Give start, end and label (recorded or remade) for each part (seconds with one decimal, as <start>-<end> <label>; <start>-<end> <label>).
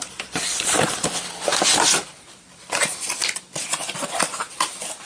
0.0-5.1 recorded